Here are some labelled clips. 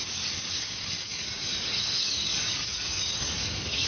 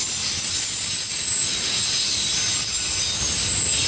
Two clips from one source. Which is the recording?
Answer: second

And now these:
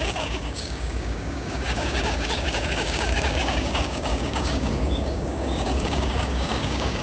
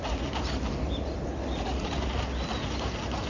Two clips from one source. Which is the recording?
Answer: second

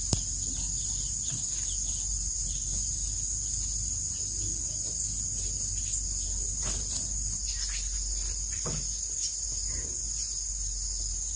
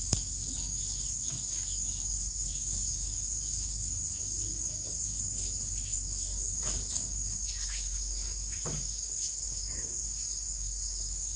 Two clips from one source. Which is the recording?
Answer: first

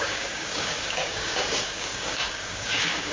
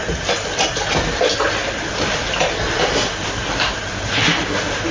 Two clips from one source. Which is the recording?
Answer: second